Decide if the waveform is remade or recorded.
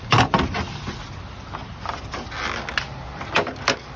recorded